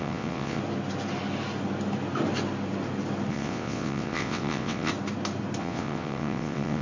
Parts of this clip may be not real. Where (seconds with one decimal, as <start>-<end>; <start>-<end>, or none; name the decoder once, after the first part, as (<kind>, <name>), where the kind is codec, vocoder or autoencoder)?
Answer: 0.0-0.6 (vocoder, WaveNeXt); 3.3-4.9; 5.6-6.8